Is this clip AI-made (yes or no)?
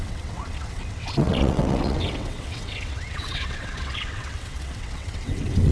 yes